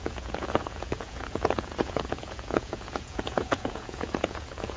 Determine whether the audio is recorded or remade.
remade